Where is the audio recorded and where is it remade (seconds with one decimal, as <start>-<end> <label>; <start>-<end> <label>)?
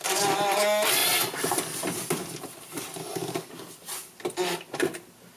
0.0-3.2 recorded; 3.2-3.8 remade; 3.8-5.4 recorded